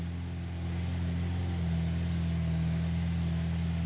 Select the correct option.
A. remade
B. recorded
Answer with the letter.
B